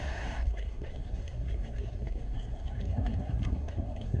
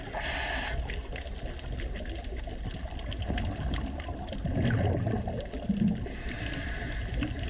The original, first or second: second